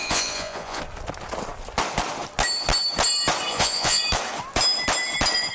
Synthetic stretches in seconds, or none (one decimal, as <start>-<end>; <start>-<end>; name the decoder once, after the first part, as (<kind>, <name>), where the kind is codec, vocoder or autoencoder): 0.0-0.8 (vocoder, Vocos); 3.5-4.0